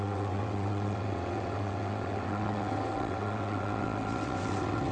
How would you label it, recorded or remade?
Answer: remade